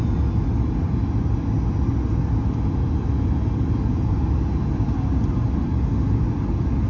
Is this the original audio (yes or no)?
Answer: yes